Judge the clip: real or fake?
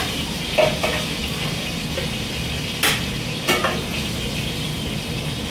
real